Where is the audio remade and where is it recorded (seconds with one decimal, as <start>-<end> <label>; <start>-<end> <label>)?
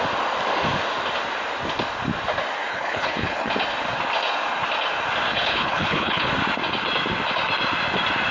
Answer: 0.0-2.7 recorded; 2.7-3.5 remade; 3.5-5.3 recorded; 5.3-6.3 remade; 6.3-8.3 recorded